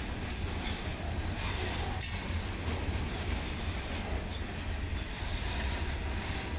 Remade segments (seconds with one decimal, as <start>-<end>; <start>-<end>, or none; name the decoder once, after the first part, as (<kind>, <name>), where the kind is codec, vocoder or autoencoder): none